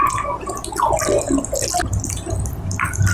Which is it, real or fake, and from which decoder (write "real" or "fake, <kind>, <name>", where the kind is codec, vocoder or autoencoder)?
real